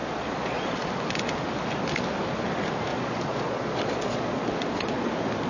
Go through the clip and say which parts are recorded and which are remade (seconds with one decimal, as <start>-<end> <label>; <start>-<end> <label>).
0.0-0.9 remade; 0.9-2.9 recorded; 2.9-5.1 remade; 5.1-5.5 recorded